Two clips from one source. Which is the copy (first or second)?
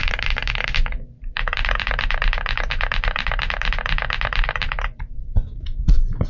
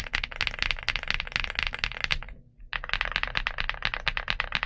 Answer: first